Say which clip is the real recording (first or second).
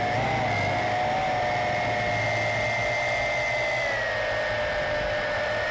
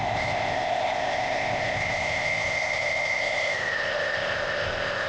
first